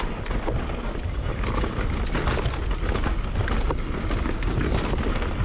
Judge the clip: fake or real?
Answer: real